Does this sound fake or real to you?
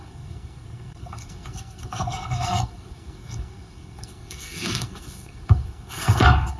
fake